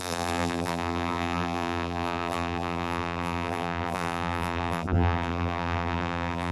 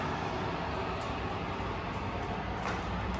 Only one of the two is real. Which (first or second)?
second